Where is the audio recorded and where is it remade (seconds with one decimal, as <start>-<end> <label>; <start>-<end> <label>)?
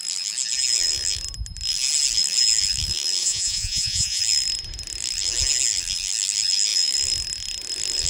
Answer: 0.0-3.2 recorded; 3.2-4.2 remade; 4.2-8.1 recorded